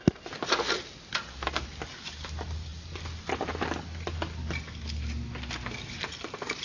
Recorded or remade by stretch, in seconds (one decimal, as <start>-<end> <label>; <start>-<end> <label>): 0.0-6.6 recorded